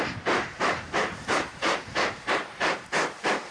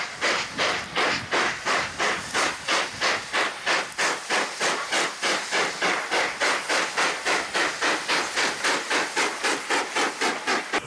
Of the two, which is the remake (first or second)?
first